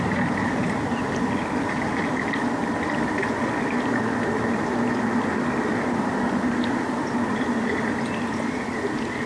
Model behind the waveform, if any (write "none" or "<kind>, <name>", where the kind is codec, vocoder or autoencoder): none